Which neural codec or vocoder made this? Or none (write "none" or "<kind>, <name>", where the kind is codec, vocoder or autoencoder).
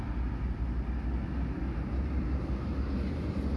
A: none